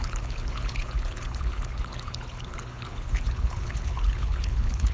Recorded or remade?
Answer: remade